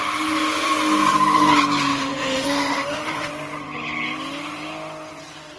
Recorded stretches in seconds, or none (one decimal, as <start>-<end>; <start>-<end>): 0.0-1.9; 3.3-5.6